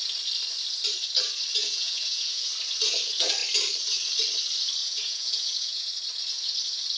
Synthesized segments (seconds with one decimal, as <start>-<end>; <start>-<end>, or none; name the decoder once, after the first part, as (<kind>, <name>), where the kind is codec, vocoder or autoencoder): 1.6-2.5 (vocoder, Vocos); 4.8-5.9